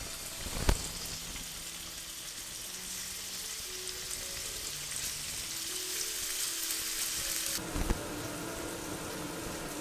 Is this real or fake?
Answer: real